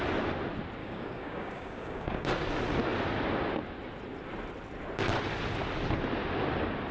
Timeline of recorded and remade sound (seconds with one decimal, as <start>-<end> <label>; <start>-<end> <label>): 0.0-0.8 recorded; 0.8-2.3 remade; 2.3-6.9 recorded